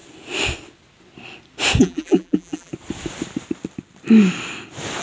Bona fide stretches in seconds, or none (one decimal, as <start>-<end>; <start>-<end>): 0.0-1.8; 2.7-5.0